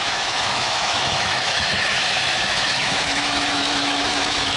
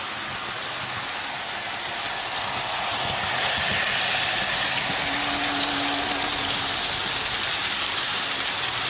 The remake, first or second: first